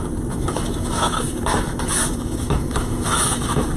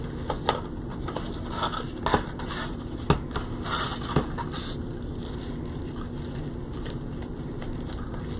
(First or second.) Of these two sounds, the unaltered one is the second